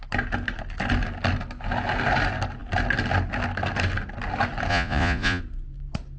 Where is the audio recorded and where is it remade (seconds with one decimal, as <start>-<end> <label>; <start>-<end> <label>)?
0.0-4.7 recorded; 4.7-5.4 remade; 5.4-6.2 recorded